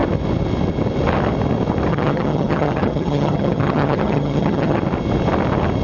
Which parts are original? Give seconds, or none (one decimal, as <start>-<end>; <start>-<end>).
0.0-1.9; 4.8-5.8